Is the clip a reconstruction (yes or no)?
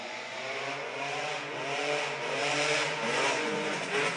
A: yes